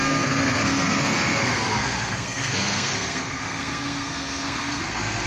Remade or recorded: remade